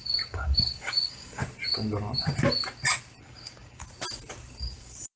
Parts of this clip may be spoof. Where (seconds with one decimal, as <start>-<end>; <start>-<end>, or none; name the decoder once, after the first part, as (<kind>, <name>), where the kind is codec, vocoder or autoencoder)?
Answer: 0.0-1.4 (codec, DAC); 3.2-3.8; 4.6-5.2